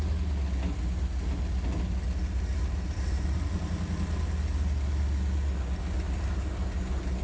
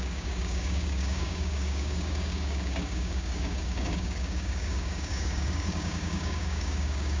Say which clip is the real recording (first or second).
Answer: first